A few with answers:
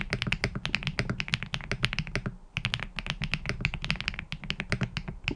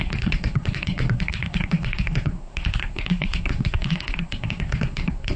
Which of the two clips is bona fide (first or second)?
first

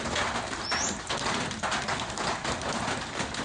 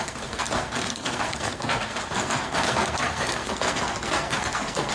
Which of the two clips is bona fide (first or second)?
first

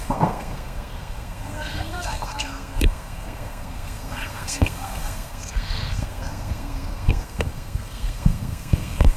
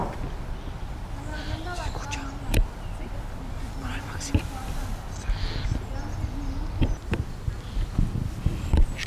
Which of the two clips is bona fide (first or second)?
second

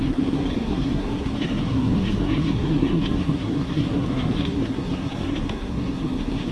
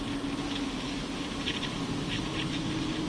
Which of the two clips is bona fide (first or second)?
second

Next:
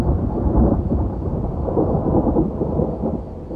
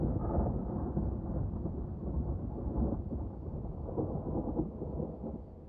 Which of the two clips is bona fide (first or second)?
second